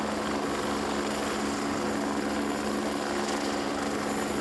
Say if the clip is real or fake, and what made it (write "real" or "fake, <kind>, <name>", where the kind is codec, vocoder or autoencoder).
real